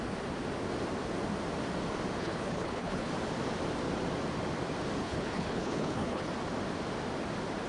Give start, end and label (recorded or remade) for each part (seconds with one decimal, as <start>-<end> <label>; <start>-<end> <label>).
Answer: 0.0-2.2 recorded; 2.2-3.1 remade; 3.1-5.0 recorded; 5.0-6.3 remade; 6.3-7.7 recorded